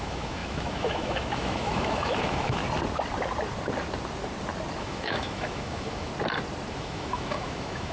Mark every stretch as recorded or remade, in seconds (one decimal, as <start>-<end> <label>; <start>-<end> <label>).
0.0-2.6 remade; 2.6-4.8 recorded; 4.8-6.1 remade; 6.1-6.7 recorded; 6.7-7.9 remade